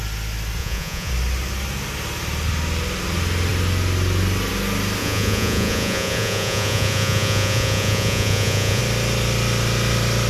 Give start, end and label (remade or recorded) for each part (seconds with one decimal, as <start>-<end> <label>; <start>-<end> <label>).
0.0-0.6 recorded; 0.6-1.1 remade; 1.1-5.0 recorded; 5.0-8.8 remade; 8.8-10.3 recorded